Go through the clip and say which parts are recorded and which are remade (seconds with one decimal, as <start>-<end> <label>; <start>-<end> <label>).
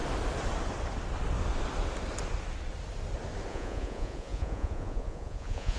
0.0-3.5 recorded; 3.5-5.8 remade